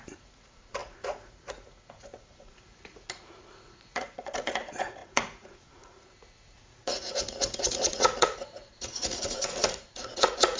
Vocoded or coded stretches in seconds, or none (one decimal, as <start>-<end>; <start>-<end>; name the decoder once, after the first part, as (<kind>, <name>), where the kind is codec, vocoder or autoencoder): 0.0-10.6 (vocoder, Vocos)